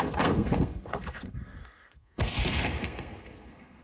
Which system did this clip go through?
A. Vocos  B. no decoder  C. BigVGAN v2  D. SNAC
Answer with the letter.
D